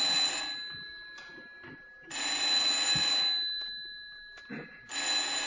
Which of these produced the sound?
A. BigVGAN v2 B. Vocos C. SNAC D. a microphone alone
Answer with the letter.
D